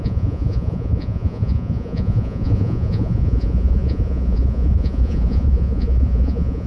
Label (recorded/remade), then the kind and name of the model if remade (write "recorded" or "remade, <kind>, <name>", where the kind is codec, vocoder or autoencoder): remade, vocoder, Vocos